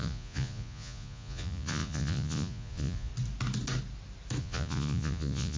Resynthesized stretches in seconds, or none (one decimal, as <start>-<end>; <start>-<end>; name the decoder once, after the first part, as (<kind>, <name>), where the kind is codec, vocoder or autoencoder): 0.0-3.1 (vocoder, Vocos); 4.4-5.6